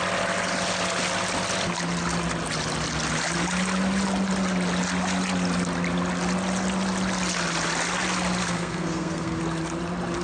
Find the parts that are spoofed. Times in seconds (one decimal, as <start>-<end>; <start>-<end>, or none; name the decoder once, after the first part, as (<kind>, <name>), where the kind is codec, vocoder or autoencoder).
8.4-9.4 (codec, SNAC)